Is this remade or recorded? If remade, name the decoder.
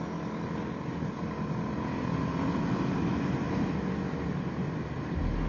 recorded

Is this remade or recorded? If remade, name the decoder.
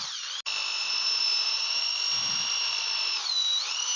recorded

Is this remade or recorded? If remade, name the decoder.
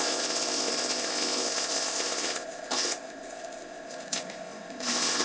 remade, codec, ZipCodec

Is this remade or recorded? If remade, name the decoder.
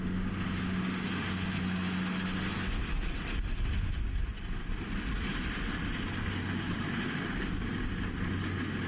recorded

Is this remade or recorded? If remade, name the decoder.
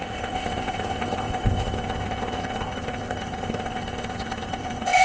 remade, codec, ZipCodec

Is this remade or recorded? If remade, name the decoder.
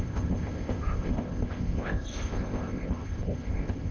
remade, codec, ZipCodec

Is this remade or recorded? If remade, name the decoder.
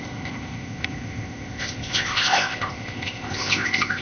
remade, codec, ZipCodec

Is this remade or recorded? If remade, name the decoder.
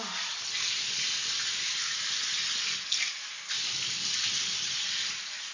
recorded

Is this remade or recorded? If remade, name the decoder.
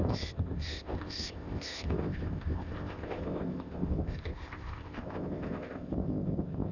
remade, codec, ZipCodec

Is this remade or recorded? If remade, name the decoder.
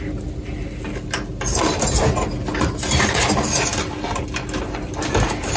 recorded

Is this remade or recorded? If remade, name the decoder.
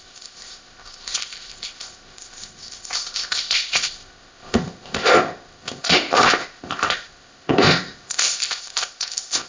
remade, codec, ZipCodec